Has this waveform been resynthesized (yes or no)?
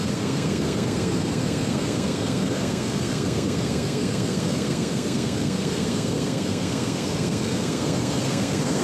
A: yes